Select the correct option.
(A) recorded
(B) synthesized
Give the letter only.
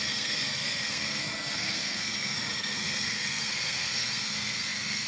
B